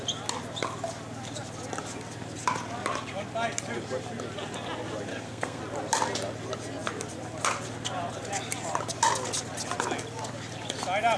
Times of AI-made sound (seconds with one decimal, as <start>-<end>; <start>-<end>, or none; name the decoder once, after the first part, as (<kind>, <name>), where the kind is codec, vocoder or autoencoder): 5.1-5.6 (codec, SNAC)